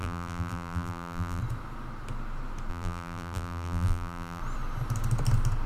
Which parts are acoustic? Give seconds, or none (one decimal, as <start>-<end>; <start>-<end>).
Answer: 1.4-2.7; 4.4-5.7